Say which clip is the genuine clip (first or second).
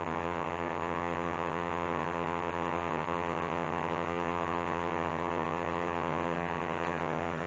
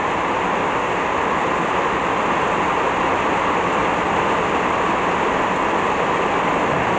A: second